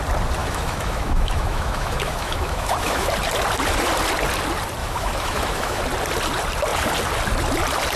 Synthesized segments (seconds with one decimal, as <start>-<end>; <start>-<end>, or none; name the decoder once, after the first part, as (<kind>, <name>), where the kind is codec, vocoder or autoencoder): 0.4-3.1 (autoencoder, DAC-VAE); 4.8-5.8